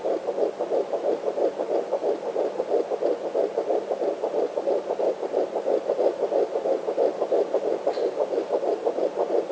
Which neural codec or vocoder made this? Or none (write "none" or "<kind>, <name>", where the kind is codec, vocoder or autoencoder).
none